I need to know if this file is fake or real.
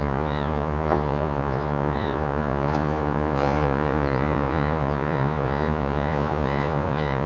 fake